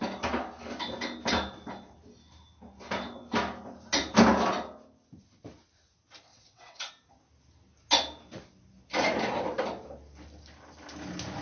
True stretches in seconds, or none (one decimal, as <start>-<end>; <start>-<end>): 0.0-6.3; 6.9-11.4